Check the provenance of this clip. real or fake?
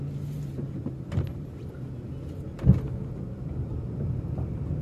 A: real